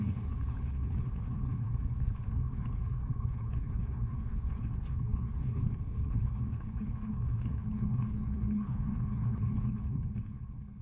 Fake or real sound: fake